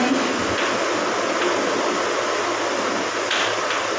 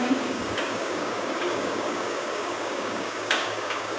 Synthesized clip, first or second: second